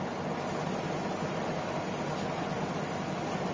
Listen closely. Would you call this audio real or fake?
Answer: real